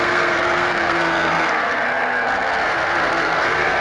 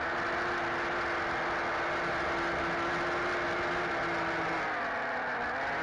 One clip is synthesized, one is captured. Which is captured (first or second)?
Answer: second